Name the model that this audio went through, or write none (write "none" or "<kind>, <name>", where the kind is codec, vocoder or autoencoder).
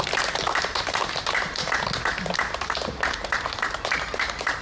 vocoder, BigVGAN v2